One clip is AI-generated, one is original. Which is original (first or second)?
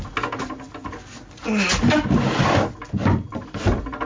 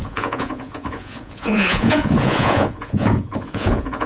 first